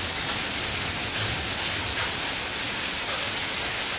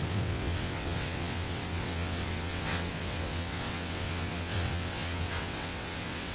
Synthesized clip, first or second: second